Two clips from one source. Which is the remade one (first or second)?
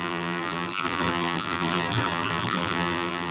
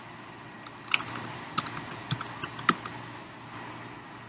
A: first